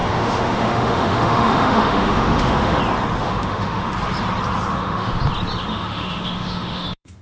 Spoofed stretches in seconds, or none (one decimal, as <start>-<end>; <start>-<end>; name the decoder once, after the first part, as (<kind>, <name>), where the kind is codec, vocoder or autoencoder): 0.0-2.8 (autoencoder, DAC-VAE); 3.2-3.9; 4.7-5.2; 5.7-7.2